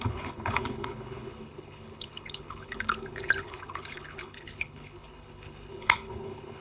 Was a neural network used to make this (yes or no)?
yes